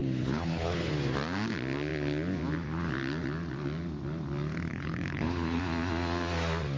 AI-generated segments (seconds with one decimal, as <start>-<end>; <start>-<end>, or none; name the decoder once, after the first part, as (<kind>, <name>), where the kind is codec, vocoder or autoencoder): 0.0-0.9 (codec, HILCodec); 4.7-5.6